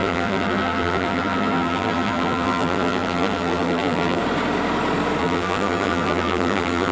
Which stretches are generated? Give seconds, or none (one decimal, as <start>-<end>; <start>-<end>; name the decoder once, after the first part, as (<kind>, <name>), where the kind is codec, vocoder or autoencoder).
0.0-4.2 (vocoder, BigVGAN v2); 5.2-6.9